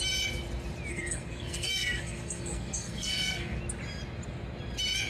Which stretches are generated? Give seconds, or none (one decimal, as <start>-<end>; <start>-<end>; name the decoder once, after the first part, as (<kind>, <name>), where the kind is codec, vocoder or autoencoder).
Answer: 0.9-3.6 (codec, SNAC)